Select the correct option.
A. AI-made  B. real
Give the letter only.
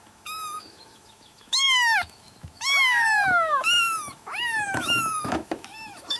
A